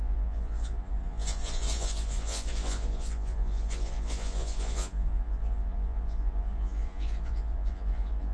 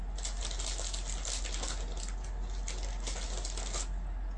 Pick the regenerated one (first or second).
first